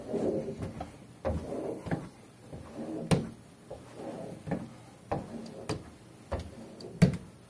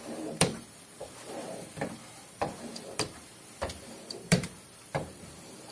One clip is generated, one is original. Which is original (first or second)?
first